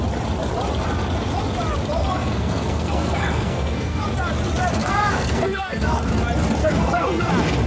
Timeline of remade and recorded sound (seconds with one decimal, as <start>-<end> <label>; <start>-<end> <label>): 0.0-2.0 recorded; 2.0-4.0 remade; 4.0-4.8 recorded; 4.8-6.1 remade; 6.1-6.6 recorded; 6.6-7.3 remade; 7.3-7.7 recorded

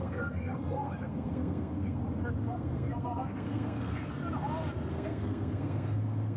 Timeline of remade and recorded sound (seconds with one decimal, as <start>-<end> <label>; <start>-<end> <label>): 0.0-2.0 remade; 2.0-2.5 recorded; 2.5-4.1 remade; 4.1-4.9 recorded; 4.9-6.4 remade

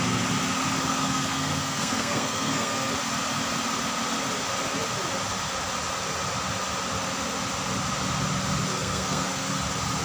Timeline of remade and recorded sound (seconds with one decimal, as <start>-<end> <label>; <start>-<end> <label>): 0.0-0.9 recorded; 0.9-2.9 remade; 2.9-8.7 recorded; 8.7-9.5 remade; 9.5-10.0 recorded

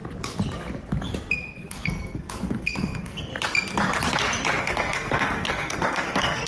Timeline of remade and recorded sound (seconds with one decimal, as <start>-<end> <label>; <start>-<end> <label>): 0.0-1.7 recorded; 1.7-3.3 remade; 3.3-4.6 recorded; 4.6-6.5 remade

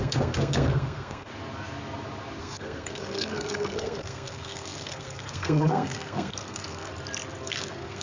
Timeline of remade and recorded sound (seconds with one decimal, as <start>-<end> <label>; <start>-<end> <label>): 0.0-1.3 remade; 1.3-2.4 recorded; 2.4-6.9 remade; 6.9-7.4 recorded; 7.4-8.0 remade

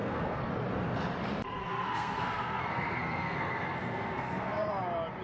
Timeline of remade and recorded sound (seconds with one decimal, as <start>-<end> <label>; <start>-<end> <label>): 0.0-0.5 remade; 0.5-1.6 recorded; 1.6-4.7 remade; 4.7-5.2 recorded

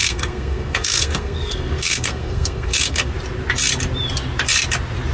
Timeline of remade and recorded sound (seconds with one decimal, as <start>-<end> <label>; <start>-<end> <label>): 0.0-3.1 remade; 3.1-5.1 recorded

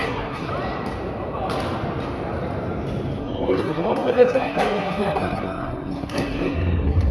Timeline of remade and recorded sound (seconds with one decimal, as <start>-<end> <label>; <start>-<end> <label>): 0.0-0.5 remade; 0.5-3.2 recorded; 3.2-7.1 remade